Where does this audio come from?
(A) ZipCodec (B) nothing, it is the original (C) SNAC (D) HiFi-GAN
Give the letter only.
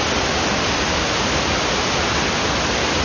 B